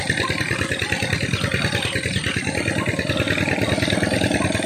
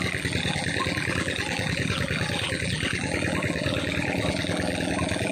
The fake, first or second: second